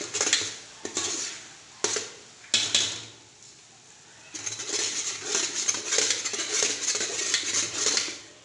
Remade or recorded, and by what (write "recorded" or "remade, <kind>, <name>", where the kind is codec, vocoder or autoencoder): recorded